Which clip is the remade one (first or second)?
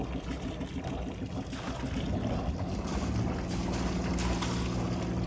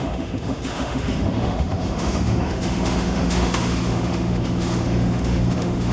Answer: second